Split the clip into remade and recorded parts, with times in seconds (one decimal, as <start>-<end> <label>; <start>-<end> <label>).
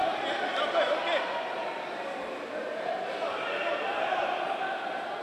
0.0-5.2 recorded